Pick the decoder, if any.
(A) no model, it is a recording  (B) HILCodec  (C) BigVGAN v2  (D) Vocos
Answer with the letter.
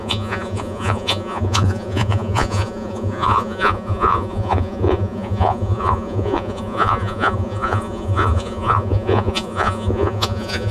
D